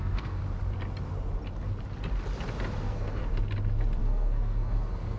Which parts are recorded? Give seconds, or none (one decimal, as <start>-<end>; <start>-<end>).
0.4-2.8; 3.2-4.0